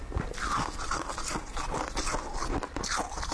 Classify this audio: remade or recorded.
recorded